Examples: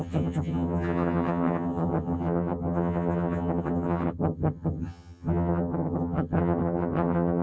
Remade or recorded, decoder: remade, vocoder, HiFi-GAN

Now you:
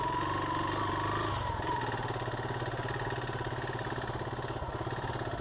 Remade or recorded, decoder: recorded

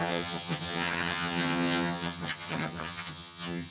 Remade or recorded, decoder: remade, vocoder, HiFi-GAN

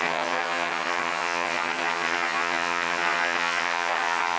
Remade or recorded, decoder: remade, vocoder, HiFi-GAN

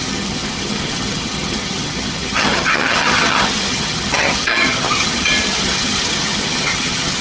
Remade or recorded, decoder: remade, vocoder, HiFi-GAN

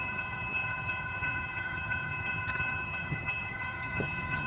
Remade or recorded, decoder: remade, vocoder, HiFi-GAN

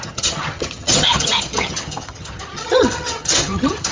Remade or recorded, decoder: remade, vocoder, HiFi-GAN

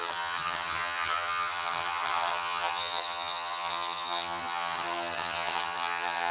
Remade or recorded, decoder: remade, vocoder, HiFi-GAN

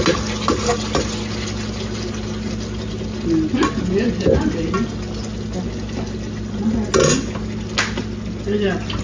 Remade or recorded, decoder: recorded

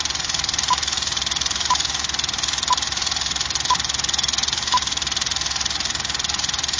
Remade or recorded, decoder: recorded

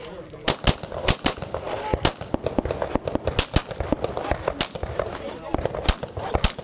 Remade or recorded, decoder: recorded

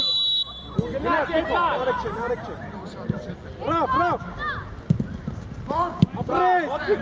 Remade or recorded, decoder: recorded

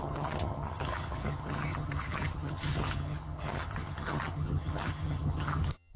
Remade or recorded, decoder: remade, vocoder, HiFi-GAN